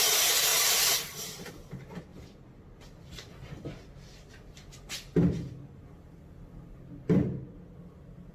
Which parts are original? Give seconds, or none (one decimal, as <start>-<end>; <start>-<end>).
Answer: 0.0-0.5; 1.5-2.1; 6.3-8.3